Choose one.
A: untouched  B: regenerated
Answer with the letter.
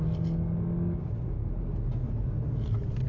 A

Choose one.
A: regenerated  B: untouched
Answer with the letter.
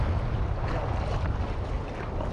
B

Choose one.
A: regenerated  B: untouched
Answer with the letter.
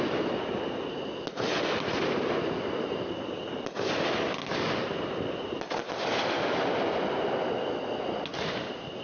B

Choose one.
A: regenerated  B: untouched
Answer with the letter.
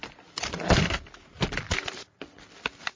B